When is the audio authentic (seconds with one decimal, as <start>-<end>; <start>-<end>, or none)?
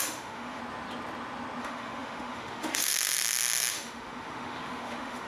0.6-1.6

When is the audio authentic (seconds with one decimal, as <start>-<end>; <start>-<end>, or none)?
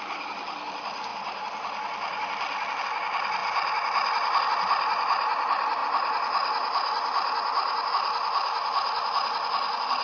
0.0-10.0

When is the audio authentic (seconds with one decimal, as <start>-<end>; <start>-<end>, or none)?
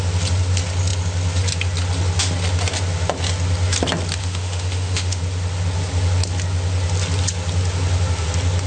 0.0-4.2; 5.2-8.7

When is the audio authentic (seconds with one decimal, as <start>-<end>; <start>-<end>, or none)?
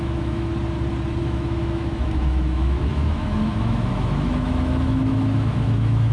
0.5-1.2